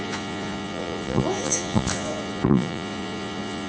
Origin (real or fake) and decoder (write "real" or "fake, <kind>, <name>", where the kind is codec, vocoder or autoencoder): fake, vocoder, Vocos